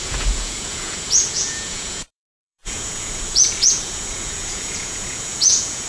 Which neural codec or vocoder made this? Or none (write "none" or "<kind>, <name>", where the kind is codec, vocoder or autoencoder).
vocoder, Vocos